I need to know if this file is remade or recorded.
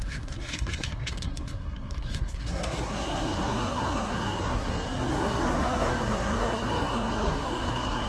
remade